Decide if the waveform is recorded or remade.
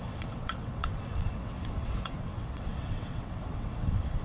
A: remade